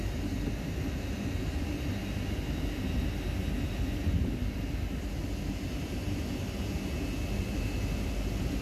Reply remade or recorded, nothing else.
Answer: recorded